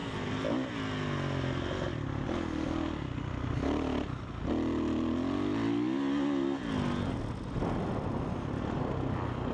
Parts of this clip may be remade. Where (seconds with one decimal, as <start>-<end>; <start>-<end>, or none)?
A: none